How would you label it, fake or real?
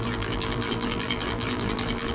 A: fake